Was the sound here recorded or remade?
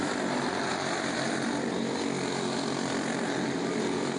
remade